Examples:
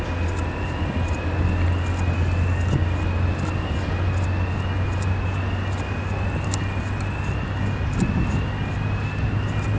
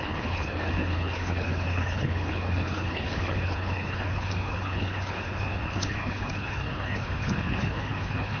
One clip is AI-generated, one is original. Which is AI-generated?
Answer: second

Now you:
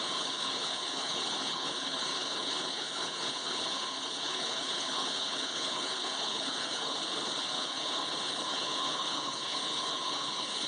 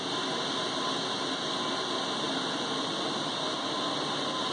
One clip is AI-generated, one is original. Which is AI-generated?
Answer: first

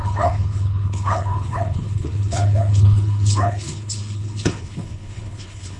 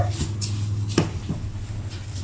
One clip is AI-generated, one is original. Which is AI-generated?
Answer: first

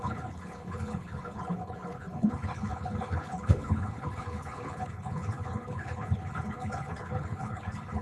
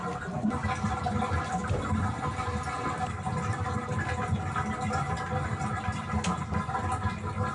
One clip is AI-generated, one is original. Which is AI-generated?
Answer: first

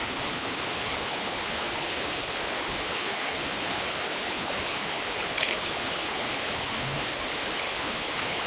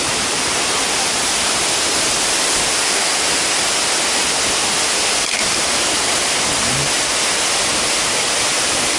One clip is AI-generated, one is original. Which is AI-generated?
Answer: first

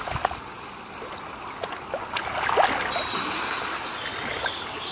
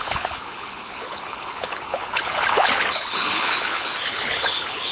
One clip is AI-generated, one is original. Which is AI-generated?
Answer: second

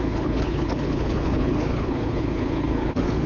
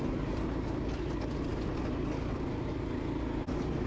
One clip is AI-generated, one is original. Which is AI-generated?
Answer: first